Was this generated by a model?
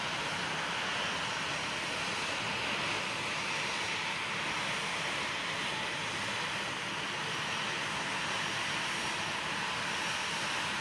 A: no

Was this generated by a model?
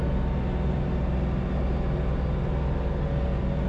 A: no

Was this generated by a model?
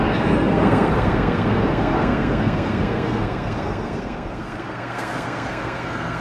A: yes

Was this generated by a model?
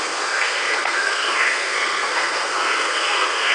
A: yes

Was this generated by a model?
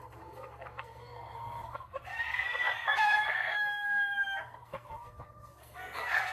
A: yes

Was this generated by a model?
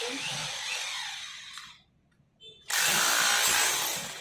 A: no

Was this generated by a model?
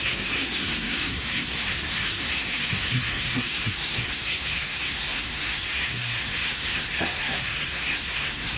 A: yes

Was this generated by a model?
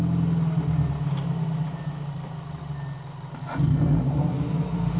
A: no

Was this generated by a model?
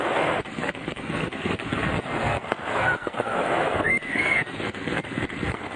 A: yes